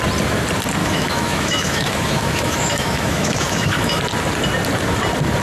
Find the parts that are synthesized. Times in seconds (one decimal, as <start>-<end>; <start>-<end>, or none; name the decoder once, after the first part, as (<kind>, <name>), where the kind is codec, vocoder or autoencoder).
0.8-4.0 (autoencoder, DAC-VAE)